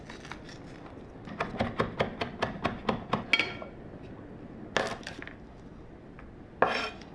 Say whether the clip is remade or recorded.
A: recorded